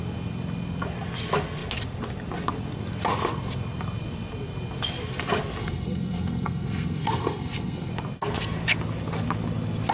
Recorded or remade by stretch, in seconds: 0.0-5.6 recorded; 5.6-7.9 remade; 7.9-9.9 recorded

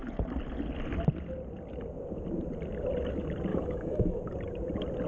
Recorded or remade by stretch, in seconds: 0.0-3.5 recorded; 3.5-4.2 remade; 4.2-5.1 recorded

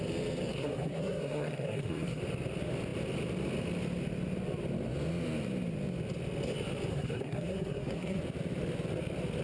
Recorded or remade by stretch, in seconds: 0.0-0.5 recorded; 0.5-2.2 remade; 2.2-6.9 recorded; 6.9-8.2 remade; 8.2-9.4 recorded

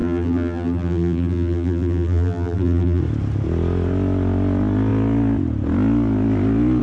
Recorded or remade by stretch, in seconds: 0.0-3.0 remade; 3.0-6.8 recorded

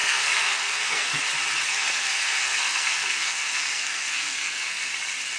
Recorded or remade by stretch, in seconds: 0.0-1.2 remade; 1.2-1.7 recorded; 1.7-4.9 remade; 4.9-5.4 recorded